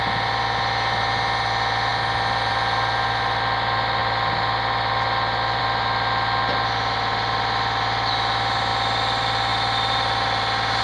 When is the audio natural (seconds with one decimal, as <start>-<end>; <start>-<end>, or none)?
0.0-10.8